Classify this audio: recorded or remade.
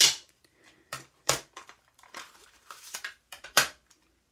remade